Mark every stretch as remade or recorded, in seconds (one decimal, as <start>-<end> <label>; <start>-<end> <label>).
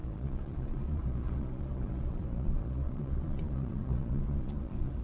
0.0-5.0 remade